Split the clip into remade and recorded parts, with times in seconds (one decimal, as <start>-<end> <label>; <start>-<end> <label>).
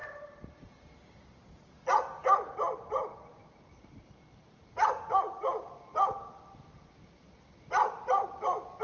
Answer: 0.0-8.8 recorded